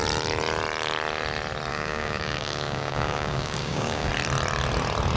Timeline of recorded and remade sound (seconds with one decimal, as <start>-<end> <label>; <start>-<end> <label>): 0.0-1.7 recorded; 1.7-4.1 remade; 4.1-5.2 recorded